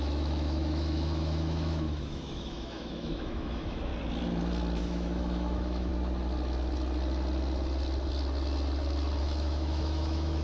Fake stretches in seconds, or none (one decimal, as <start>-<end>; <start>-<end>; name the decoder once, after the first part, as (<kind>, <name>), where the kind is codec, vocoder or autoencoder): 0.0-3.9 (autoencoder, DAC-VAE); 4.8-5.9; 9.2-10.4